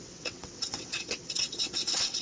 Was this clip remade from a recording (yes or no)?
yes